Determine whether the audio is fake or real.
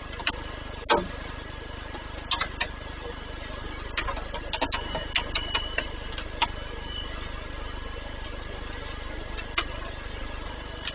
real